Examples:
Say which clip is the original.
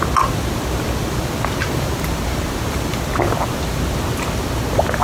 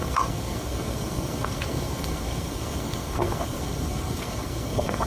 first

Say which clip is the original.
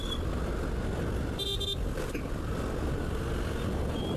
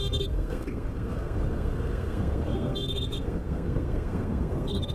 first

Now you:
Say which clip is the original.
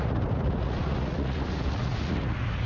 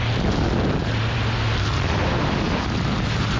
second